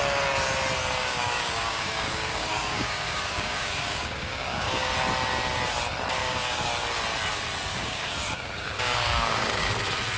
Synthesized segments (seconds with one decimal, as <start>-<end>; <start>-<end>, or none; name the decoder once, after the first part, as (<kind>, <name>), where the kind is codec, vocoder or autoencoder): 1.0-4.9 (codec, DAC); 6.2-6.7; 7.7-9.7